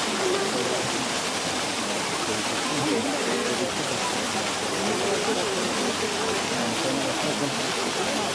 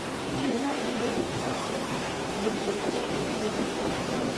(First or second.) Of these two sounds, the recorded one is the first